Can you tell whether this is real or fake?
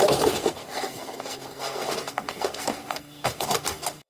fake